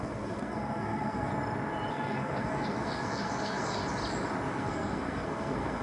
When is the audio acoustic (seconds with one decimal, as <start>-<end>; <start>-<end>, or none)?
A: 1.3-1.9; 3.8-4.5